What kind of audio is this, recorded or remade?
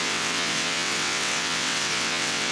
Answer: remade